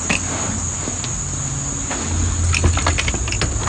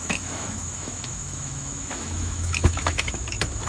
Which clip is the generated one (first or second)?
second